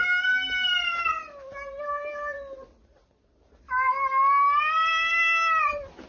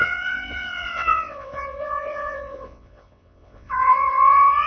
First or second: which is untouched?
first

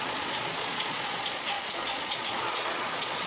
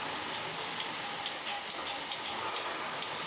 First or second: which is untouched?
second